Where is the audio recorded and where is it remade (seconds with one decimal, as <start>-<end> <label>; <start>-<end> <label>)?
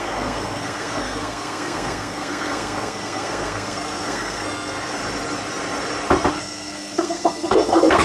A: 0.0-5.0 remade; 5.0-6.3 recorded; 6.3-8.0 remade